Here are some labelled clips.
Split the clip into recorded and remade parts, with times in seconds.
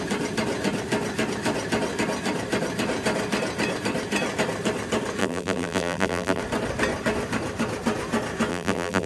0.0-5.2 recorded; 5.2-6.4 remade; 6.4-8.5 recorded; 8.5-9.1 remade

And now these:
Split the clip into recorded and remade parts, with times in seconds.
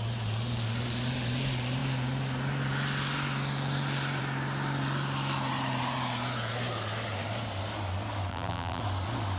0.0-8.3 recorded; 8.3-8.8 remade; 8.8-9.4 recorded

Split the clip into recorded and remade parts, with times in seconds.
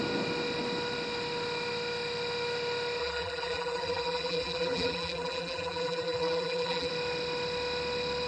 0.0-3.0 recorded; 3.0-6.9 remade; 6.9-8.3 recorded